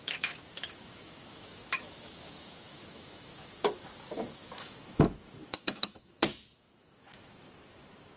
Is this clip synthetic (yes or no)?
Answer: yes